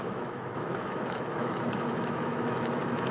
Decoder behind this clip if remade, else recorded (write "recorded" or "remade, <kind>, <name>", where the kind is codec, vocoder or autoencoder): remade, autoencoder, DAC-VAE